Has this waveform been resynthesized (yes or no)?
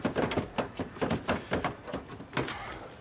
no